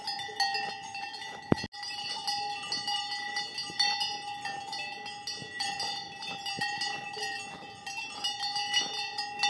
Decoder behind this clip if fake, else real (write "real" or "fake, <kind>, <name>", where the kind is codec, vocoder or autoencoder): real